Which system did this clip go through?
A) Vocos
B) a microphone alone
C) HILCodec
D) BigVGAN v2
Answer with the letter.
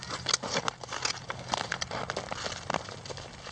B